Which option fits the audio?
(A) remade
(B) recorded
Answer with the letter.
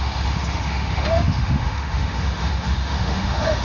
A